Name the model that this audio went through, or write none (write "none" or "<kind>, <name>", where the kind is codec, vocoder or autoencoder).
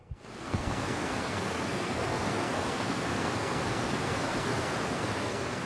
codec, SNAC